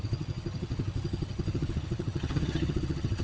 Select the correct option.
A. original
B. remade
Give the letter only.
B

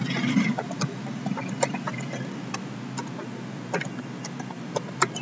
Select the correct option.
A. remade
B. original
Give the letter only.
B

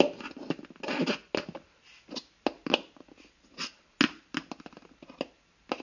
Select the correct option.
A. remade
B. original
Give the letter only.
B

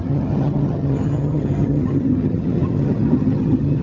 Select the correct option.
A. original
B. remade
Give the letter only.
B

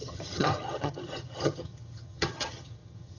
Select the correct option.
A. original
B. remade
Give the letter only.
B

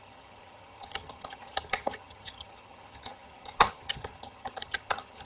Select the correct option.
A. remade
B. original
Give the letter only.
A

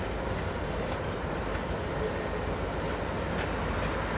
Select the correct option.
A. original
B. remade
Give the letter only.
A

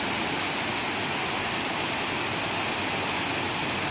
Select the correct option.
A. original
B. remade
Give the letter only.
A